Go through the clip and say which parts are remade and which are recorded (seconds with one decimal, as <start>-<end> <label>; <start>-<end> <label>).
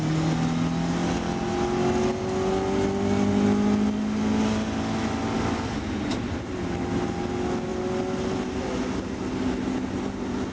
0.0-10.5 recorded